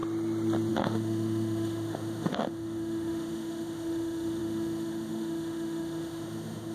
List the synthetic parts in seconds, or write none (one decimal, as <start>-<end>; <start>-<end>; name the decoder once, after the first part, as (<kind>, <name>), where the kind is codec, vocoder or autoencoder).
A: 0.7-6.7 (autoencoder, DAC-VAE)